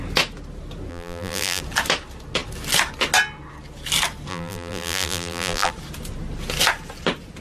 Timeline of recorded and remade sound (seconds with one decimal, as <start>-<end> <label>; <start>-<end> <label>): 0.0-0.9 recorded; 0.9-1.6 remade; 1.6-4.3 recorded; 4.3-5.7 remade; 5.7-7.4 recorded